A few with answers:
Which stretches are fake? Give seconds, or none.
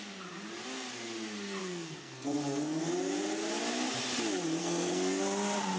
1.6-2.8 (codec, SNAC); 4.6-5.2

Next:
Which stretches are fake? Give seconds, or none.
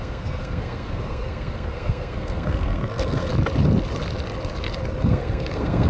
0.0-3.3 (codec, SNAC); 5.0-5.9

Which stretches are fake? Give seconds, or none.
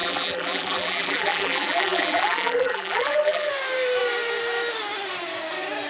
0.0-3.5 (vocoder, BigVGAN v2)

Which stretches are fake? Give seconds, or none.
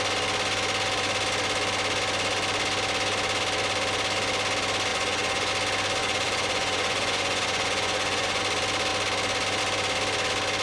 4.9-5.5 (vocoder, Vocos); 6.0-8.4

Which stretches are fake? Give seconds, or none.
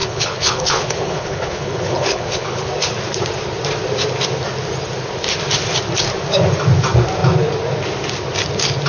0.0-2.7 (codec, HILCodec)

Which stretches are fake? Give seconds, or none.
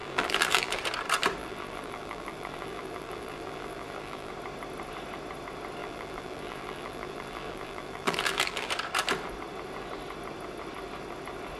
0.0-0.8 (vocoder, BigVGAN v2); 1.4-4.3; 5.8-8.7